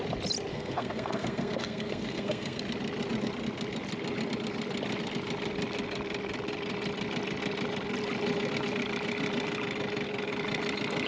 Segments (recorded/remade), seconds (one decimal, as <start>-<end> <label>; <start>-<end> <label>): 0.0-0.5 recorded; 0.5-2.6 remade; 2.6-11.1 recorded